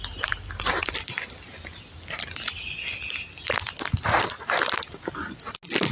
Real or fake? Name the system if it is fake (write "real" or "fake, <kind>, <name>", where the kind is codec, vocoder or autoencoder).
real